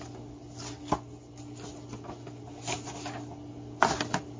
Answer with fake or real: real